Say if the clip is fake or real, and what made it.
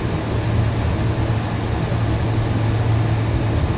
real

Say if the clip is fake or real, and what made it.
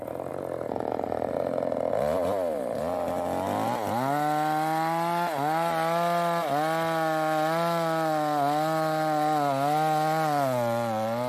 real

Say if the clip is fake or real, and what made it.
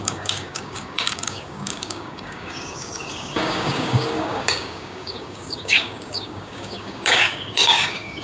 fake, codec, DAC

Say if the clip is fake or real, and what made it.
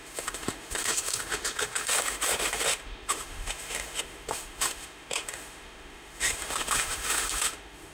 fake, autoencoder, DAC-VAE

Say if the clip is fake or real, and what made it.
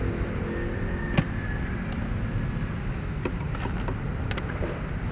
real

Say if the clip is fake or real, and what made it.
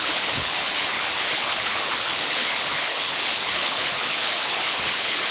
fake, codec, HILCodec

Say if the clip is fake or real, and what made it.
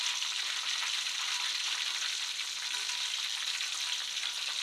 real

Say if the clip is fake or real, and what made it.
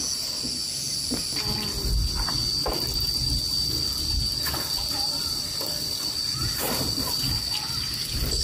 real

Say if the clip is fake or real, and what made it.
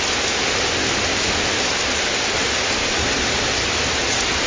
real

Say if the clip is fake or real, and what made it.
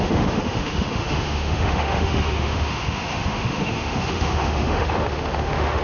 fake, autoencoder, DAC-VAE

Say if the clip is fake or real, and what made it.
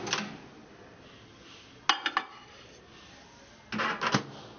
real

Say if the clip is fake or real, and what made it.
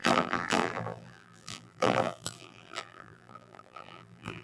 fake, vocoder, BigVGAN v2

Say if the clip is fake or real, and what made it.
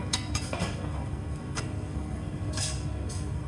fake, codec, SNAC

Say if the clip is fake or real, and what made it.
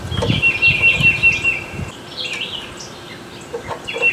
real